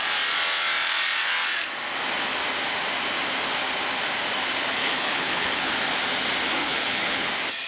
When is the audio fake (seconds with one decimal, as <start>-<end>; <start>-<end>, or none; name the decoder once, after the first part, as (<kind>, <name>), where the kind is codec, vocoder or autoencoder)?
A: 4.8-5.7 (codec, HILCodec); 6.6-7.3